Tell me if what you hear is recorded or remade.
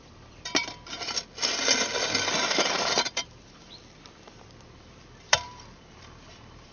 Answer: remade